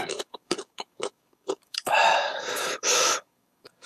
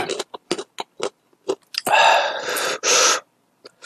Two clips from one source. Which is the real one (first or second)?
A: second